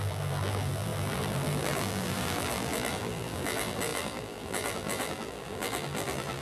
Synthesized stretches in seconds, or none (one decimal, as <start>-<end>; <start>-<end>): 0.0-6.4